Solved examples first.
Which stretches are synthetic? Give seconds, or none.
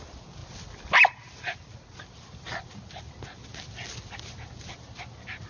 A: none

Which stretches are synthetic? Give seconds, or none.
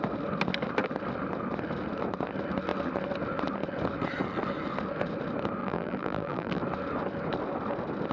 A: 5.6-6.6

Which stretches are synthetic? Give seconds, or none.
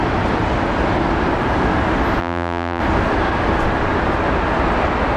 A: 2.2-2.8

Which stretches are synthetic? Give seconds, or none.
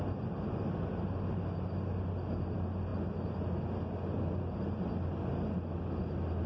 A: none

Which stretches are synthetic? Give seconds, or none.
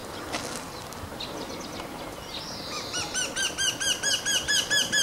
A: none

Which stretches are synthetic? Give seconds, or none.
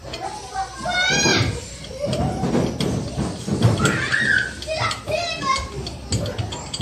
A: 1.3-2.5